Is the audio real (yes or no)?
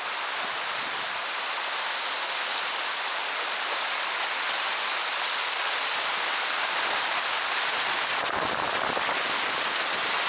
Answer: yes